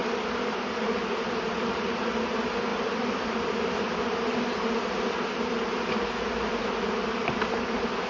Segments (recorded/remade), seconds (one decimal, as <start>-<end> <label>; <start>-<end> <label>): 0.0-8.1 recorded

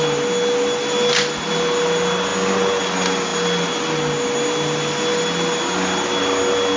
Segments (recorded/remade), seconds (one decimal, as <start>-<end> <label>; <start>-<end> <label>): 0.0-6.8 recorded

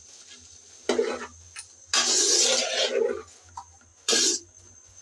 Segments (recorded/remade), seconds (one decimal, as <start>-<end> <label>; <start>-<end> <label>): 0.0-3.9 recorded; 3.9-5.0 remade

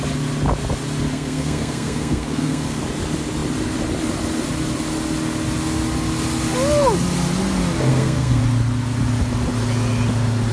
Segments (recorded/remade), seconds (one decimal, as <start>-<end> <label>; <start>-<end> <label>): 0.0-1.1 recorded; 1.1-2.8 remade; 2.8-7.9 recorded; 7.9-8.4 remade; 8.4-10.5 recorded

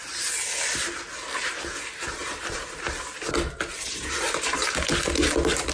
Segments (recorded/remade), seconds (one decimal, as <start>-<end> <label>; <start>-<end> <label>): 0.0-2.2 recorded; 2.2-2.8 remade; 2.8-3.7 recorded; 3.7-4.7 remade; 4.7-5.7 recorded